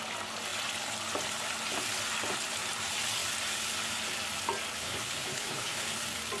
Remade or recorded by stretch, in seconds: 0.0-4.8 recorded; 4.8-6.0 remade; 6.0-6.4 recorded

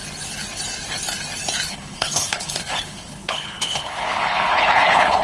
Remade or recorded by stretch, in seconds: 0.0-1.7 recorded; 1.7-5.2 remade

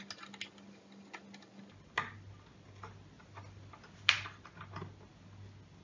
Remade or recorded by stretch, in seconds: 0.0-5.8 recorded

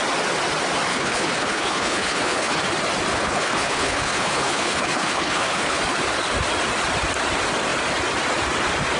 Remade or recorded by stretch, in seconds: 0.0-0.9 recorded; 0.9-2.6 remade; 2.6-3.1 recorded; 3.1-5.8 remade; 5.8-9.0 recorded

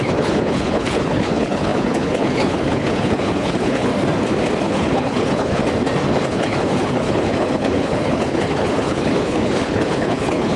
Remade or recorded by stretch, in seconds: 0.0-3.9 remade; 3.9-4.6 recorded; 4.6-5.6 remade; 5.6-6.3 recorded; 6.3-10.6 remade

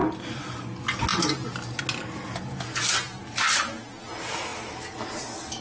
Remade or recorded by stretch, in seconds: 0.0-5.6 recorded